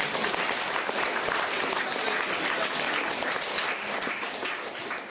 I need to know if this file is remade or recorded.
recorded